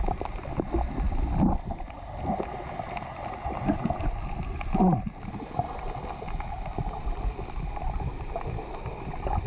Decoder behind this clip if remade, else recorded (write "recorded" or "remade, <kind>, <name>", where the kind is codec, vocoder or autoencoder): recorded